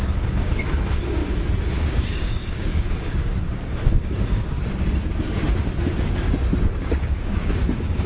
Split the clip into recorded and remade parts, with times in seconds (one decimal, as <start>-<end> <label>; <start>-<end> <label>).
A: 0.0-1.2 remade; 1.2-1.8 recorded; 1.8-4.5 remade; 4.5-6.8 recorded; 6.8-8.1 remade